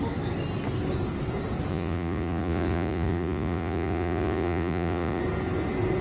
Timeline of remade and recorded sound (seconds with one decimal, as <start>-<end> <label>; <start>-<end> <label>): 0.0-1.7 recorded; 1.7-5.2 remade; 5.2-6.0 recorded

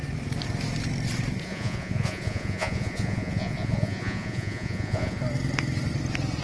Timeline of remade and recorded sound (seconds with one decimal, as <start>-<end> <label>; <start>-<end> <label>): 0.0-1.4 recorded; 1.4-5.2 remade; 5.2-6.4 recorded

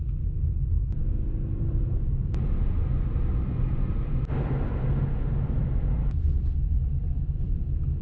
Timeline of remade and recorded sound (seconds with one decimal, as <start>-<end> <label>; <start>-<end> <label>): 0.0-3.2 recorded; 3.2-8.0 remade

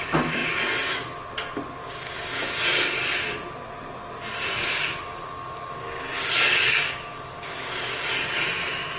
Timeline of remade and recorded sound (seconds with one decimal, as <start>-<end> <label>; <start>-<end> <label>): 0.0-1.8 recorded; 1.8-2.8 remade; 2.8-4.6 recorded; 4.6-8.1 remade; 8.1-9.0 recorded

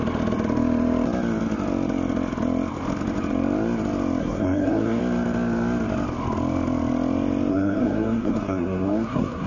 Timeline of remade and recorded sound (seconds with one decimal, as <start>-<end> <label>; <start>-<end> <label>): 0.0-4.2 recorded; 4.2-5.0 remade; 5.0-7.5 recorded; 7.5-9.5 remade

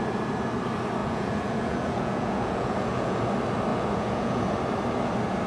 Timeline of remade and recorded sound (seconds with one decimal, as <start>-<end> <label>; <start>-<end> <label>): 0.0-1.0 recorded; 1.0-3.2 remade; 3.2-3.7 recorded; 3.7-4.4 remade; 4.4-5.5 recorded